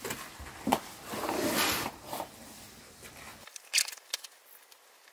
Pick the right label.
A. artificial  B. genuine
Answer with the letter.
B